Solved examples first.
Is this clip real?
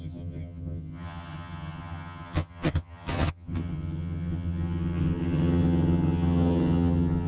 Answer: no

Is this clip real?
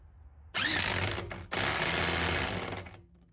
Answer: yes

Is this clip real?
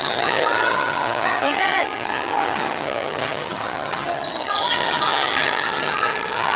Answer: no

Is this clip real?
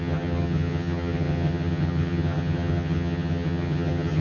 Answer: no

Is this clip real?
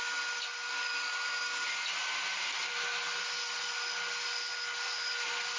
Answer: yes